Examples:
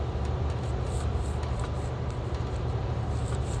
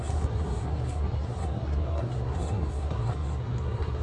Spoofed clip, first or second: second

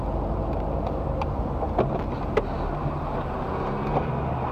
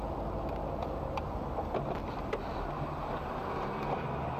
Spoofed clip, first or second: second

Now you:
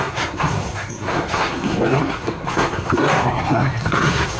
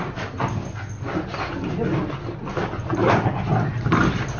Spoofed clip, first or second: first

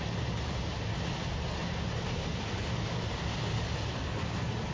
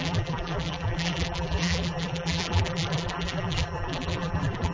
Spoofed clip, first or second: second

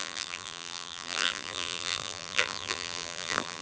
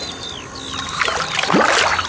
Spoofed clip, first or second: first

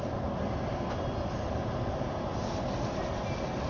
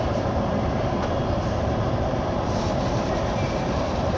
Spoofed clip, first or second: second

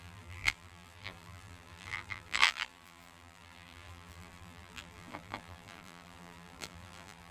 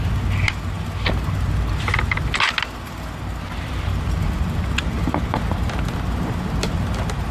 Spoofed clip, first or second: first